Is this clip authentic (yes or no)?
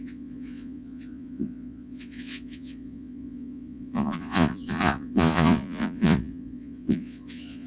no